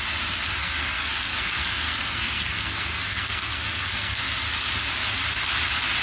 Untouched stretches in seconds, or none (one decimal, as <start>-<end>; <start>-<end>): 0.0-0.6; 4.2-6.0